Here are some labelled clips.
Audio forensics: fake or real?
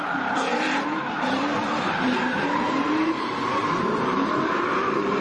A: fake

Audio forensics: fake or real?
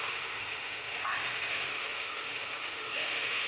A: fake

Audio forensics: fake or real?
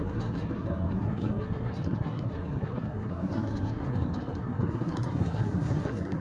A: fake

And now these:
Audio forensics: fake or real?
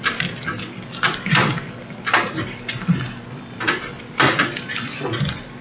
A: fake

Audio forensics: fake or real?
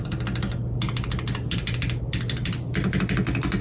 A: real